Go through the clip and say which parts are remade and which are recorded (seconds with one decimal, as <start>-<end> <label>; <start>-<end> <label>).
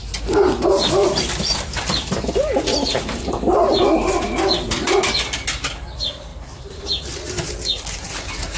0.0-1.0 recorded; 1.0-2.2 remade; 2.2-6.3 recorded; 6.3-6.8 remade; 6.8-8.6 recorded